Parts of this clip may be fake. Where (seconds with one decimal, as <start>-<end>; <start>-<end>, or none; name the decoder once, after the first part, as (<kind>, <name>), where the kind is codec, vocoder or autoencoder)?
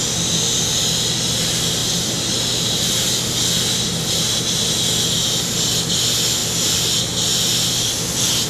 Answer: 1.8-3.2 (vocoder, BigVGAN v2)